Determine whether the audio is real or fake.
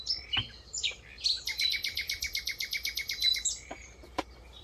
fake